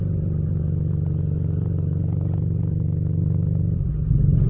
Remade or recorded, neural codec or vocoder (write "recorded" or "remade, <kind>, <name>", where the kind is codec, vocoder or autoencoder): recorded